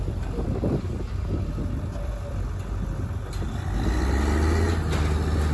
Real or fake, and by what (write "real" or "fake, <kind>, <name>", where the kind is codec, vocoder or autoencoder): real